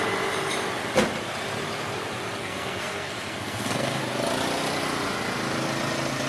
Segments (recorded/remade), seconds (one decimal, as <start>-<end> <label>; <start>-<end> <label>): 0.0-2.4 recorded; 2.4-4.0 remade; 4.0-6.3 recorded

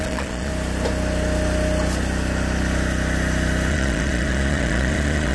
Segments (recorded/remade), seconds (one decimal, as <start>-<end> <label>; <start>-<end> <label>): 0.0-0.5 remade; 0.5-3.7 recorded; 3.7-5.3 remade

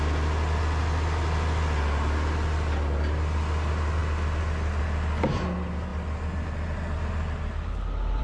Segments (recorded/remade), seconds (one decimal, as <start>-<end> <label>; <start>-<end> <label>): 0.0-8.2 recorded

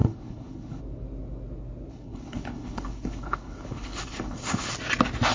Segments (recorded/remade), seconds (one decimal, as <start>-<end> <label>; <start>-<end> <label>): 0.0-0.8 remade; 0.8-1.9 recorded; 1.9-4.7 remade; 4.7-5.3 recorded

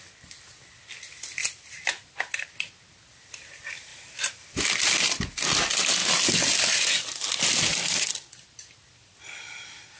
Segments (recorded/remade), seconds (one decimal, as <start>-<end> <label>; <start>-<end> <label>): 0.0-10.0 recorded

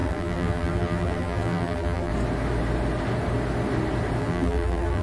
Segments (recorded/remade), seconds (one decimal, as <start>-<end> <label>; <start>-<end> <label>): 0.0-2.1 remade; 2.1-4.2 recorded; 4.2-5.0 remade

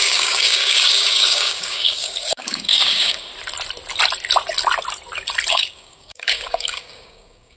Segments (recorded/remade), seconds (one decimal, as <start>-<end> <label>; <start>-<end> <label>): 0.0-3.3 remade; 3.3-5.5 recorded; 5.5-7.6 remade